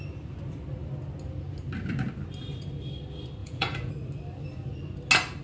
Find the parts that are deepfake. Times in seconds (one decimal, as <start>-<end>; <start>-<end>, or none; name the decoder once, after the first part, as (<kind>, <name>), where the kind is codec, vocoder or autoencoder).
3.4-3.9 (vocoder, Vocos)